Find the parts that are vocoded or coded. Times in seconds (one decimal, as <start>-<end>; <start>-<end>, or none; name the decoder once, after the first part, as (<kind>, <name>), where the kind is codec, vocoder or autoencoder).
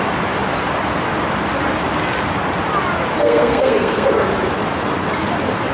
3.2-4.1 (codec, SNAC)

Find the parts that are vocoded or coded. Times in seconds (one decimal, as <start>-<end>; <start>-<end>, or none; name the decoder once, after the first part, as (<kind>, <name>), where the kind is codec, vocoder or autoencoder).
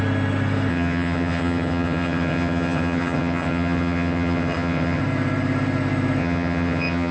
0.7-5.0 (vocoder, HiFi-GAN); 6.2-7.1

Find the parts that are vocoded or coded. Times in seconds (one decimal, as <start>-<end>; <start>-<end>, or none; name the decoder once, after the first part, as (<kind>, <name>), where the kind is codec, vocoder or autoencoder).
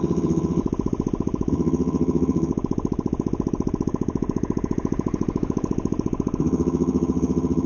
0.0-0.6 (vocoder, HiFi-GAN); 1.5-2.5; 6.4-7.7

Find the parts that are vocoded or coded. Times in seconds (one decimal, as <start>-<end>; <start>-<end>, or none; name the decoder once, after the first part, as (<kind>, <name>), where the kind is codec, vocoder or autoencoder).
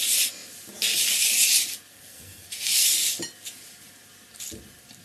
1.9-2.9 (codec, SNAC)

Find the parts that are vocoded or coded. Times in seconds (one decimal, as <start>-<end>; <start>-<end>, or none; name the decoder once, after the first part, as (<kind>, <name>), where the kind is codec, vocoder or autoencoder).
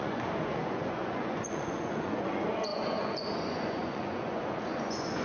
0.0-5.2 (vocoder, Vocos)